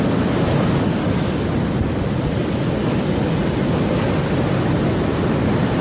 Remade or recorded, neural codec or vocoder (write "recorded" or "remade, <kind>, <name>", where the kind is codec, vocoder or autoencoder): recorded